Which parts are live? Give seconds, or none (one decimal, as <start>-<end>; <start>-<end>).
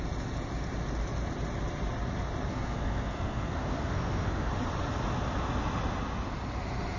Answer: 0.0-2.5; 4.5-7.0